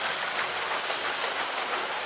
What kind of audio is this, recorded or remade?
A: recorded